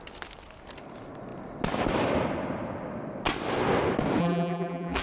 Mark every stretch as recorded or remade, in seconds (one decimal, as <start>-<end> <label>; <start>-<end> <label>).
0.0-4.2 recorded; 4.2-5.0 remade